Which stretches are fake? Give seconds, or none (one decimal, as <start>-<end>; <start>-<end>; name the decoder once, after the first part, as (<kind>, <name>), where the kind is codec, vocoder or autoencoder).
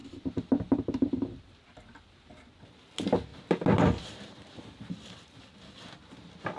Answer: 0.0-1.8 (vocoder, BigVGAN v2); 3.3-5.9